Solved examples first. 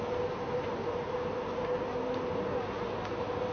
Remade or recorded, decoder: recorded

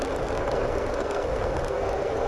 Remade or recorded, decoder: remade, codec, SNAC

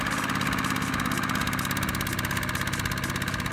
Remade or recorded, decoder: recorded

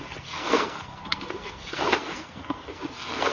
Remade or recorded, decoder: remade, codec, SNAC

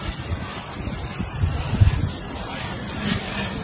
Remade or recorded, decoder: remade, vocoder, BigVGAN v2